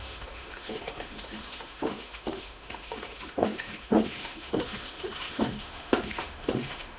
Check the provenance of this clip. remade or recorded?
remade